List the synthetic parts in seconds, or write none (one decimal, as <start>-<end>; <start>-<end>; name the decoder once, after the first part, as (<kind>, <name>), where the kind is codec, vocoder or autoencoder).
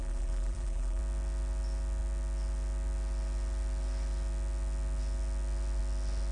0.0-1.0 (vocoder, BigVGAN v2)